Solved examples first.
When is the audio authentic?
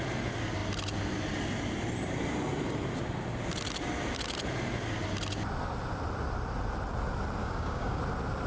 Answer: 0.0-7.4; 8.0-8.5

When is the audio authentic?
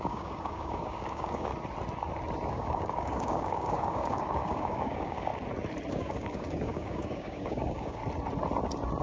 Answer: 1.5-2.5; 5.3-5.9; 8.0-9.0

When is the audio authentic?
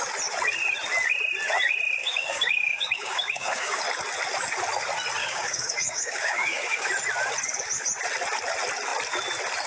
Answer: 0.0-2.0; 3.8-5.2; 6.9-9.7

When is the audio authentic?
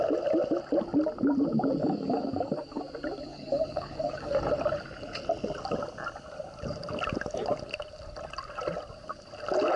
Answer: 0.0-1.8; 2.8-3.3; 4.4-9.8